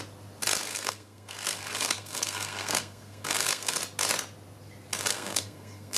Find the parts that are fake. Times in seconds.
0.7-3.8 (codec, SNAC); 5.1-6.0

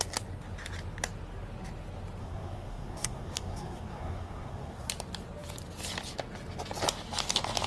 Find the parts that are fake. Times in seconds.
2.2-4.9 (codec, SNAC)

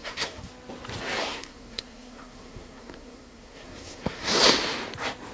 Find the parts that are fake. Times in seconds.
0.0-0.5 (codec, SNAC); 1.2-4.4

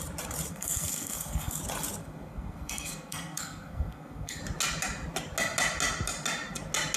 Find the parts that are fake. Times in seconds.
0.5-1.6 (codec, SNAC); 2.0-4.4